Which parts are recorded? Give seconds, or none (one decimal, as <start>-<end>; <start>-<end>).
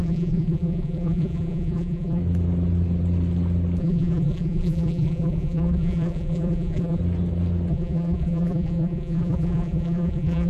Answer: 2.2-3.8; 7.0-7.7